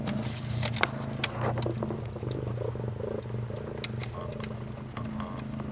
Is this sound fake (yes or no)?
no